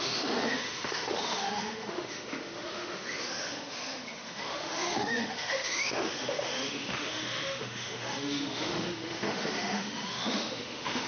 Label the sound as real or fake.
fake